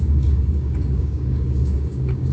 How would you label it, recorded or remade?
remade